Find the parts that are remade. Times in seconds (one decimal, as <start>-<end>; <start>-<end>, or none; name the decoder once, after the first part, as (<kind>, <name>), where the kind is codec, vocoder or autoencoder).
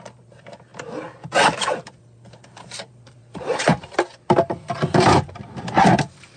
0.0-0.7 (vocoder, BigVGAN v2); 1.9-3.7; 4.9-6.4